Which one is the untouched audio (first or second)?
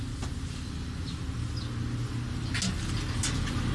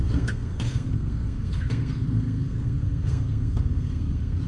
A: first